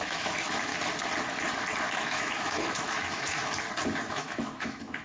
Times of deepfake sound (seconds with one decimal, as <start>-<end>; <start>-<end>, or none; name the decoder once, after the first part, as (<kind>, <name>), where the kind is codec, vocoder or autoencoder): 0.0-0.7 (autoencoder, DAC-VAE); 1.9-3.4; 4.1-5.0